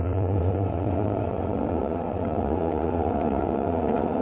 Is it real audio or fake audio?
fake